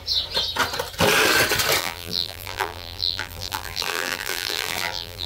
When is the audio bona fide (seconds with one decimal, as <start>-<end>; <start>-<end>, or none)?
0.0-1.8